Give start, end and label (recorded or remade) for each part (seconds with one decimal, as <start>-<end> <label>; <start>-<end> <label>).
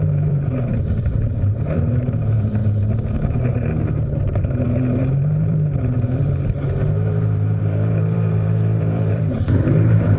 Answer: 0.0-10.2 remade